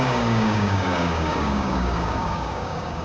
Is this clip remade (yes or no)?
yes